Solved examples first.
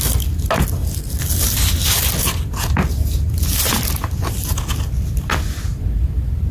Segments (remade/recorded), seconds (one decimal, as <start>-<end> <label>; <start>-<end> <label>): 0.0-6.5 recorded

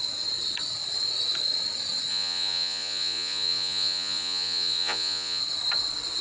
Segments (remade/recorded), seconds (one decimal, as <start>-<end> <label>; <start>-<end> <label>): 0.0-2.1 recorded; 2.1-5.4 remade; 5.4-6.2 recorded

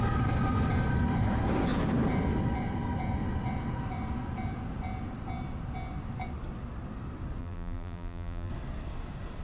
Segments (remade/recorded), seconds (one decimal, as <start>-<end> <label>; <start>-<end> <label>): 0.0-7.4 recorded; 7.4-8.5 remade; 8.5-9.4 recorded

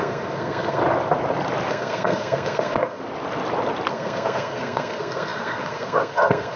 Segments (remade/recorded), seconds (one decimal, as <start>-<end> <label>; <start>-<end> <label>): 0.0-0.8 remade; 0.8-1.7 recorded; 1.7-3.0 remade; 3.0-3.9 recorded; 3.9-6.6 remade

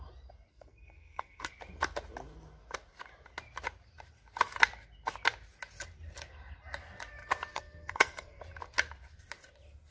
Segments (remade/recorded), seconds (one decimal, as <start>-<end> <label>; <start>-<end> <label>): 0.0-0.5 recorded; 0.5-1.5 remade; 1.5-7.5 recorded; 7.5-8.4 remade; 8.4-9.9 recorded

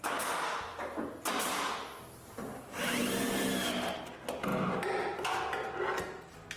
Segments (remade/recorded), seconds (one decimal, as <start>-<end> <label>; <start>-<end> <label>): 0.0-6.6 recorded